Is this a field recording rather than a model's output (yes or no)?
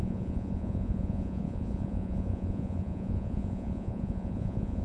no